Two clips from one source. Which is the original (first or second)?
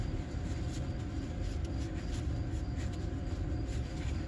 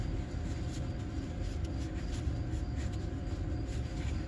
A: second